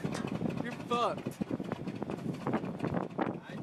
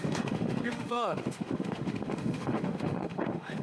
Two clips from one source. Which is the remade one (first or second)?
second